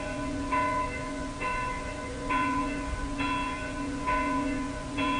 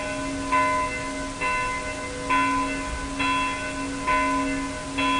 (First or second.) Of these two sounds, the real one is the second